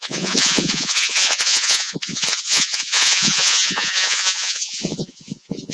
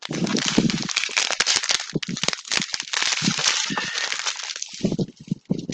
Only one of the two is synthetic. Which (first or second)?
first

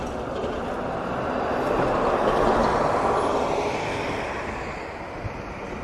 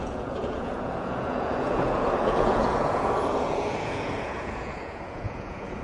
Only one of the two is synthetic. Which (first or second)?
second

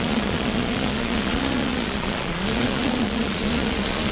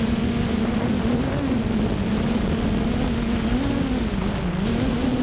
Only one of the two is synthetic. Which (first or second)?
first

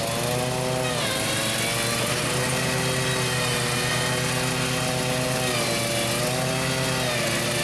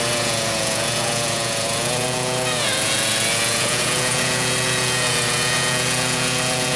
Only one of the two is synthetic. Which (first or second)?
second